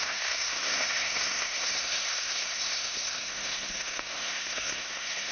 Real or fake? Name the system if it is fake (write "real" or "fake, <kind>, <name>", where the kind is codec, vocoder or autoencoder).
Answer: fake, codec, SNAC